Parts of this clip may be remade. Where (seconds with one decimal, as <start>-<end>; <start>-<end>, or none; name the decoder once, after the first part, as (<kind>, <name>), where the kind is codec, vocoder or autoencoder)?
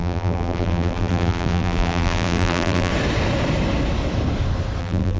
0.0-2.9 (vocoder, BigVGAN v2); 4.8-5.2